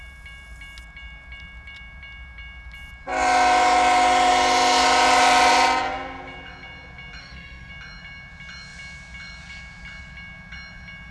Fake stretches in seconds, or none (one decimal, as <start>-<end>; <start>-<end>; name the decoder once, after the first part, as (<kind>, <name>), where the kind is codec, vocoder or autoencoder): 7.2-7.7 (codec, SNAC)